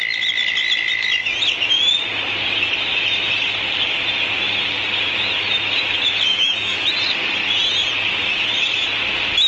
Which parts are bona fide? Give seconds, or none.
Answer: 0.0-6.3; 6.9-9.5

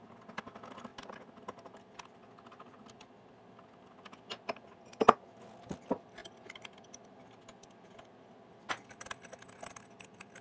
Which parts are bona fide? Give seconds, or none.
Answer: 0.0-10.4

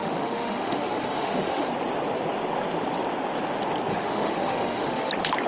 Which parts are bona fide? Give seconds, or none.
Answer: 1.7-3.9; 5.1-5.5

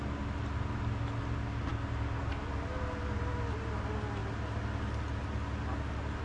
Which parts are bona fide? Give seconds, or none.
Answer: 0.0-6.2